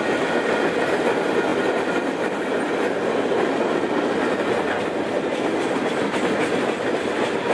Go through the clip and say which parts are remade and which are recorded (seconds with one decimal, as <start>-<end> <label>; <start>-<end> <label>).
0.0-7.5 recorded

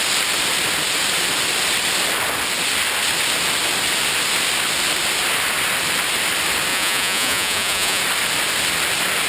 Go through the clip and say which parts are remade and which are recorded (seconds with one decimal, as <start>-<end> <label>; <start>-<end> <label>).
0.0-6.7 recorded; 6.7-8.0 remade; 8.0-9.3 recorded